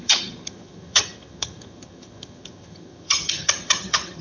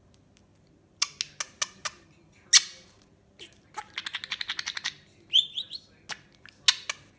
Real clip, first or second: second